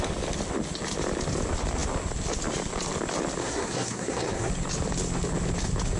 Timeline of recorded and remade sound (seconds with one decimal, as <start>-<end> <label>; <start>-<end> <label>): 0.0-3.4 recorded; 3.4-4.5 remade; 4.5-6.0 recorded